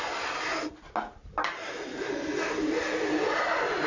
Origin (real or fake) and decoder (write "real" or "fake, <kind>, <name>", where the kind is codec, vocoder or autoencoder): real